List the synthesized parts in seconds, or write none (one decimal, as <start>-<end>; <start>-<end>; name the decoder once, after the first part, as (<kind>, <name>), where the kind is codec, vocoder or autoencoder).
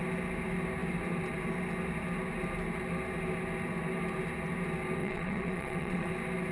5.0-6.1 (vocoder, WaveNeXt)